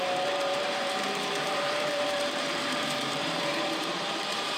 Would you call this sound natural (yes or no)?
no